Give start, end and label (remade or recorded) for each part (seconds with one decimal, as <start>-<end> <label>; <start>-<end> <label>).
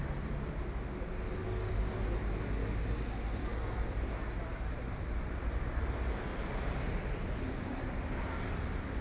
0.0-6.3 recorded; 6.3-9.0 remade